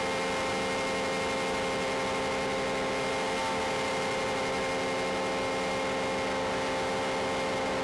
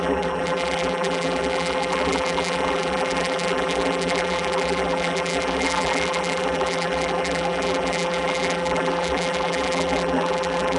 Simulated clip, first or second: second